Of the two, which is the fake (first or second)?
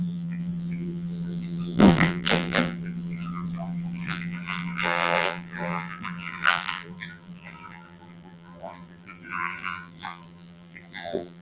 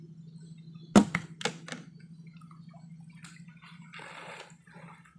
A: first